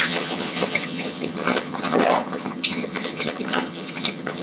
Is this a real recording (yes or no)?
no